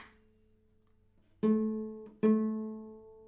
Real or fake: real